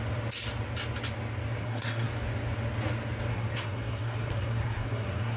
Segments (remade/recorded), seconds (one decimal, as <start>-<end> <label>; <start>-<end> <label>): 0.0-1.6 recorded; 1.6-2.1 remade; 2.1-3.3 recorded; 3.3-5.4 remade